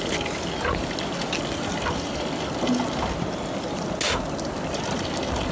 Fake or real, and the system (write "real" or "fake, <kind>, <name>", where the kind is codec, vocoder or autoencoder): real